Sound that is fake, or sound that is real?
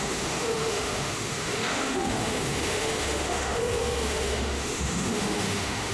fake